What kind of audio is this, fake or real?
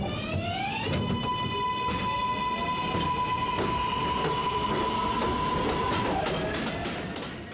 real